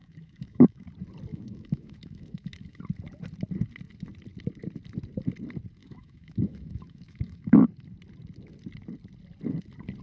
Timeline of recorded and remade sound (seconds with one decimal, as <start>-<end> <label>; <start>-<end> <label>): 0.0-0.9 remade; 0.9-1.3 recorded; 1.3-2.8 remade; 2.8-5.8 recorded; 5.8-7.6 remade; 7.6-10.0 recorded